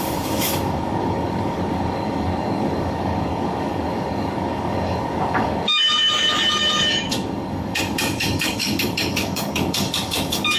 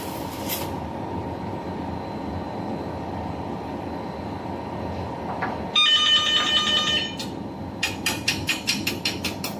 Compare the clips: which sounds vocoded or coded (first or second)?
first